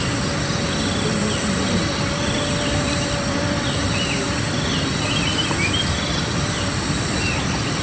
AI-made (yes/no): no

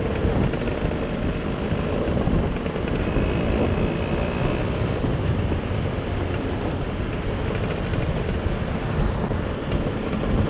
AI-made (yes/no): no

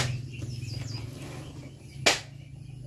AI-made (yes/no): no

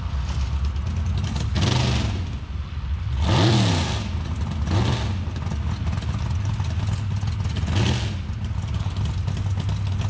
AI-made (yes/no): no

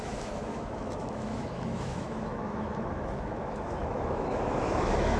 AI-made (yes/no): yes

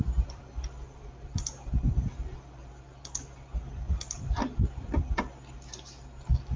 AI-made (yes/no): no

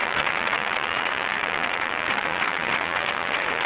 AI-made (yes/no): yes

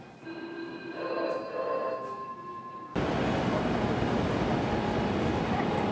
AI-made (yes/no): no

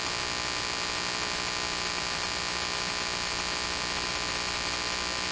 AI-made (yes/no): no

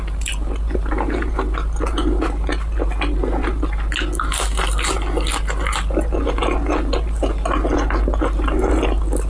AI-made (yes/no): no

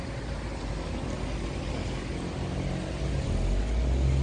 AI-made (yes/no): no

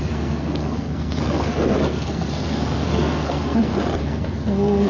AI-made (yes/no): yes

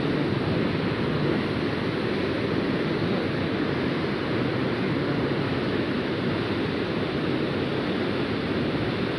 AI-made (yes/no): no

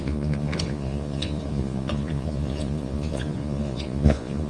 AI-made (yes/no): yes